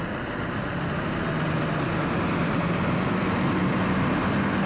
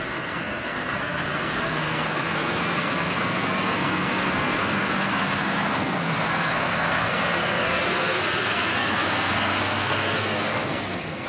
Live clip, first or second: first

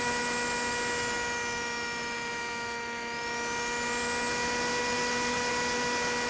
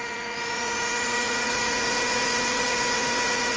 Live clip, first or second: first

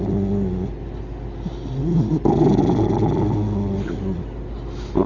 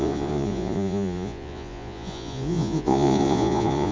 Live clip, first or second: first